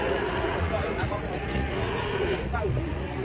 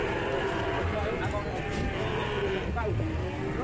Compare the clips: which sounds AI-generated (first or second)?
first